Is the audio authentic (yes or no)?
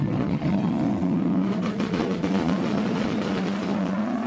no